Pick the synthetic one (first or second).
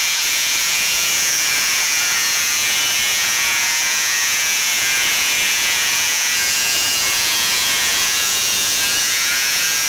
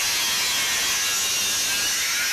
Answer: first